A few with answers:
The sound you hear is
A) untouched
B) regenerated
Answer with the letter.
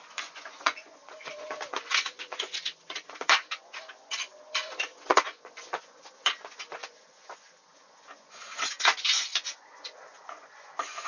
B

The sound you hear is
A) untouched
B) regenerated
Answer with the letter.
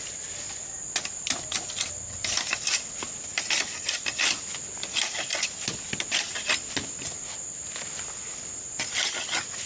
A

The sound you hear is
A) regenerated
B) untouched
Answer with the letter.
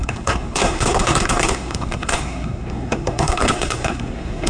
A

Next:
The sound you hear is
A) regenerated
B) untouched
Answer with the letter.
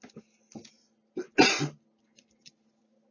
B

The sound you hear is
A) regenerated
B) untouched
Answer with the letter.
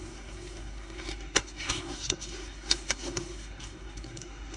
A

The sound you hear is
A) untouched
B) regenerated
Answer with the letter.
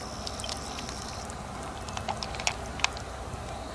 A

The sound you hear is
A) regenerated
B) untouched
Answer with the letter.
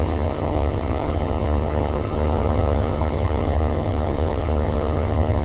A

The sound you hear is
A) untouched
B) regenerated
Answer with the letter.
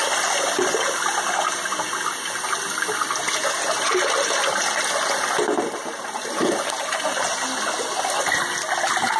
A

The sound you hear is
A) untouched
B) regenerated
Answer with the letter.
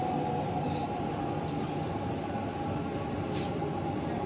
A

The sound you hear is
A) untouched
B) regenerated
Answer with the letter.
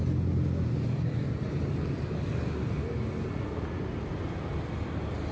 A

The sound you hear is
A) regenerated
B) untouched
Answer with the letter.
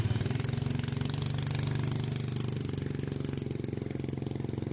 B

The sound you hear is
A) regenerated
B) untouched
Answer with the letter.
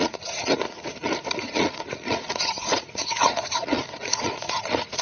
A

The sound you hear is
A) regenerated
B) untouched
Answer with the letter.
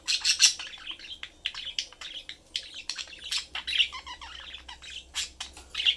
B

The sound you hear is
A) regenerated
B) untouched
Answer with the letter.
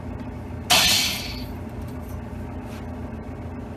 B